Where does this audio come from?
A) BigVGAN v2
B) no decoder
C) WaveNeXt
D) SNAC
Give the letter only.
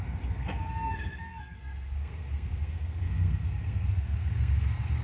D